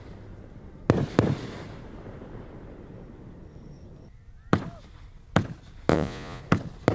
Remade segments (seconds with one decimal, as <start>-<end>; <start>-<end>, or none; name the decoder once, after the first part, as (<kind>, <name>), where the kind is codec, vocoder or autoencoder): 5.9-6.4 (vocoder, Vocos)